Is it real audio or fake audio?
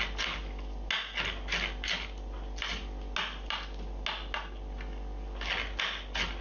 real